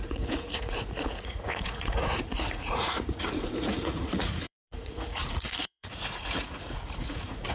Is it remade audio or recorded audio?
remade